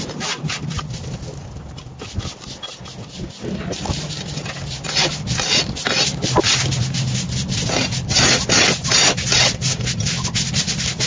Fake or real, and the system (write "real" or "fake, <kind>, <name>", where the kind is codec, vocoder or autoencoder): real